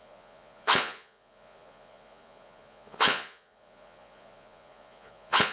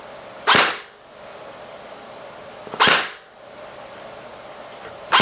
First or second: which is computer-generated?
first